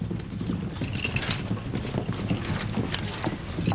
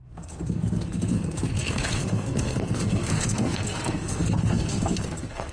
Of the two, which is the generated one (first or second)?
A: second